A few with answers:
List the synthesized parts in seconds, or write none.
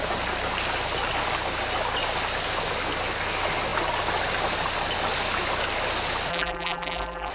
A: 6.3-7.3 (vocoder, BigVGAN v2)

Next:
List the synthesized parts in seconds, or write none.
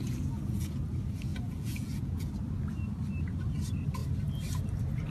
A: 0.0-0.7 (vocoder, Vocos); 1.3-2.3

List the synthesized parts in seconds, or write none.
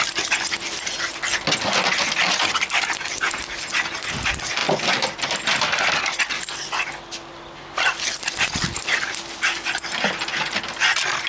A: none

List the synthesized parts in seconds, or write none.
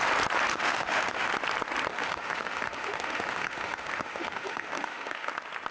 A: 0.5-1.3 (autoencoder, DAC-VAE); 1.9-5.3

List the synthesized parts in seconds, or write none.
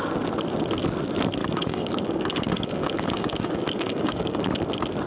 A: 1.4-4.5 (codec, DAC)